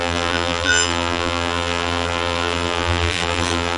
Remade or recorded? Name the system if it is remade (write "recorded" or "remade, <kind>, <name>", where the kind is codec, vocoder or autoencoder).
remade, vocoder, BigVGAN v2